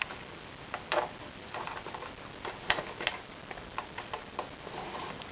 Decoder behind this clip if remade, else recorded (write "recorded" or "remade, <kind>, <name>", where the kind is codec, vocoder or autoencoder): recorded